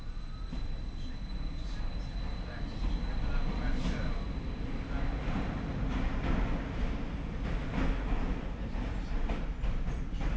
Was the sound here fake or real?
real